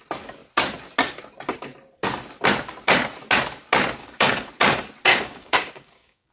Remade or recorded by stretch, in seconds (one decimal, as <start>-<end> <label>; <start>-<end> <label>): 0.0-4.0 recorded; 4.0-4.5 remade; 4.5-5.1 recorded; 5.1-6.3 remade